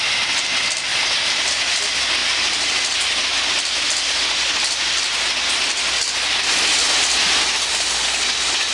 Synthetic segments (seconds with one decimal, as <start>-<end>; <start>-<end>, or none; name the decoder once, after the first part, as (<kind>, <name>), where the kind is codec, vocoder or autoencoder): none